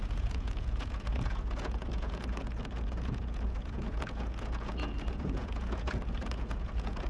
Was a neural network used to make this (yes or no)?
yes